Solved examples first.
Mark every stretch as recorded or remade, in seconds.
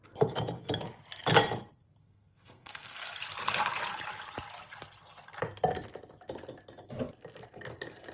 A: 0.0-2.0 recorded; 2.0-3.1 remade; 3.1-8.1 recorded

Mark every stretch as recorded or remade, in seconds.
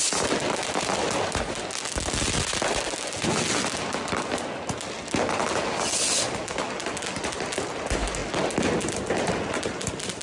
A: 0.0-10.2 recorded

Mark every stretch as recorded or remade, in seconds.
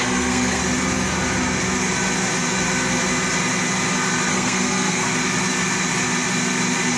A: 0.0-0.6 remade; 0.6-4.3 recorded; 4.3-5.0 remade; 5.0-7.0 recorded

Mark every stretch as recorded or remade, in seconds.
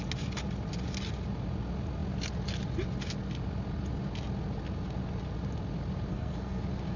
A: 0.0-6.1 recorded; 6.1-6.6 remade; 6.6-7.0 recorded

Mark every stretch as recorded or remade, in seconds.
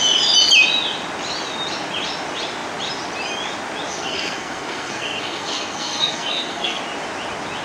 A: 0.0-3.9 recorded; 3.9-6.8 remade; 6.8-7.6 recorded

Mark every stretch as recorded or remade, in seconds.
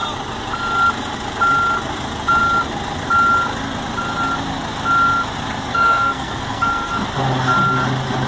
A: 0.0-5.7 recorded; 5.7-6.9 remade; 6.9-8.3 recorded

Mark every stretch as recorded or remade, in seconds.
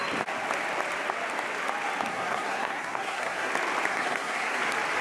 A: 0.0-2.1 recorded; 2.1-3.5 remade; 3.5-3.9 recorded; 3.9-4.6 remade; 4.6-5.0 recorded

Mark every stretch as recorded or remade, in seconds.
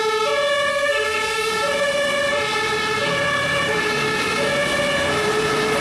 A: 0.0-0.7 recorded; 0.7-1.5 remade; 1.5-5.8 recorded